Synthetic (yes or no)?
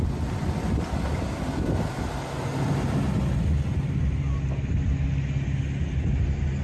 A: no